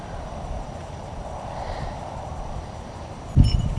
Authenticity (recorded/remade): remade